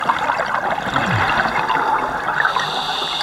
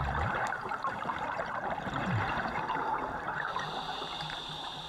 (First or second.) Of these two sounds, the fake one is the second